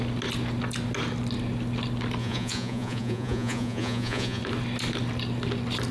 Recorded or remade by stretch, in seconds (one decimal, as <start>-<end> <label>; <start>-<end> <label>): 0.0-2.2 recorded; 2.2-4.4 remade; 4.4-5.9 recorded